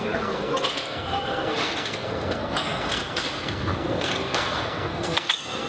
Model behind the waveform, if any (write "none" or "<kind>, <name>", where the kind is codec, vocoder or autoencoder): codec, SNAC